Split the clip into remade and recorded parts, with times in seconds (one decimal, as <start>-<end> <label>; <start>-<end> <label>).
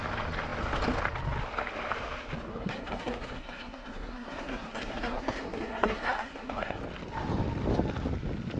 0.0-2.5 recorded; 2.5-6.8 remade; 6.8-8.6 recorded